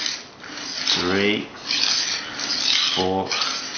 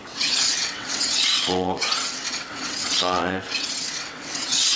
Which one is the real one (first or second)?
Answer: first